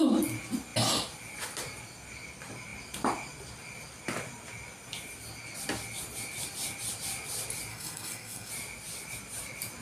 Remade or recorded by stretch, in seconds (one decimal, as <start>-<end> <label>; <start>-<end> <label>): 0.0-7.7 recorded; 7.7-8.5 remade; 8.5-9.8 recorded